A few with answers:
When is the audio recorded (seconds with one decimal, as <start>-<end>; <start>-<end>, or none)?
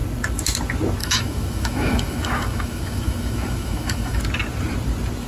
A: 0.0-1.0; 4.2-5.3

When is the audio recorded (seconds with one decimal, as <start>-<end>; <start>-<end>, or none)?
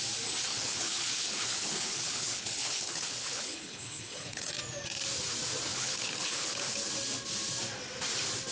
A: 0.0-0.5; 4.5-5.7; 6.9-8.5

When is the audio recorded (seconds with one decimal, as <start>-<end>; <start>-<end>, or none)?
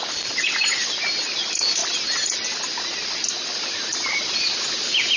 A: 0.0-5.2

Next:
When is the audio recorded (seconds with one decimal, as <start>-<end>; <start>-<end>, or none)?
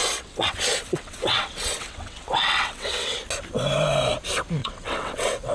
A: 3.2-4.6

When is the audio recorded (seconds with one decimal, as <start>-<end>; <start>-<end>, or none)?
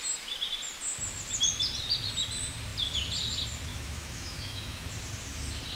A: 0.0-3.7; 4.9-5.8